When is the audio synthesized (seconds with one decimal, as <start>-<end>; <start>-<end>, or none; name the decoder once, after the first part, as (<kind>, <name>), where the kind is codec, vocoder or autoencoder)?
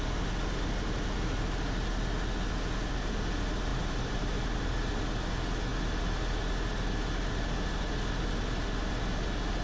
3.7-4.2 (vocoder, BigVGAN v2)